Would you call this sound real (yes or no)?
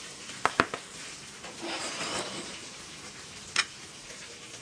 no